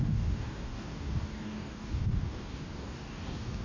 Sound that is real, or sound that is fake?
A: fake